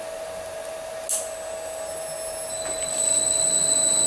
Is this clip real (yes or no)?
yes